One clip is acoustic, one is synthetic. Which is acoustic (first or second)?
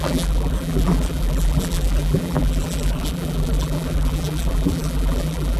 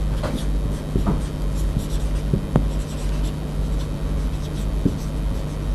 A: second